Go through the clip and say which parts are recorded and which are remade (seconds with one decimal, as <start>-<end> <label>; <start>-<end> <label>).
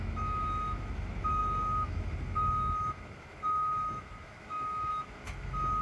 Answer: 0.0-5.8 remade